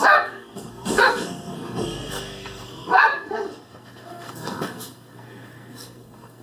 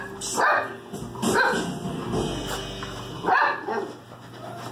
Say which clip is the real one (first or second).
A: second